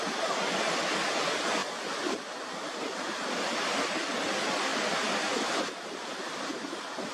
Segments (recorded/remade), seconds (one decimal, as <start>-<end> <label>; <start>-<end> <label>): 0.0-7.1 recorded